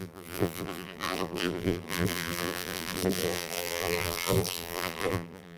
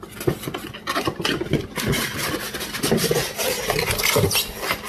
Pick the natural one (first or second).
second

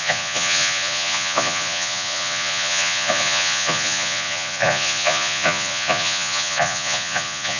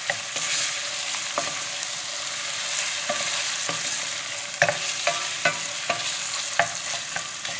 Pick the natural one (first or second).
second